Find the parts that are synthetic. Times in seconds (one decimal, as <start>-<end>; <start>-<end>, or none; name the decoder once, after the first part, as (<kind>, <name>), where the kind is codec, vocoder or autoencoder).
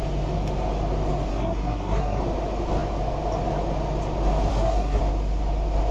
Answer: 1.3-2.2 (codec, SNAC); 4.5-5.0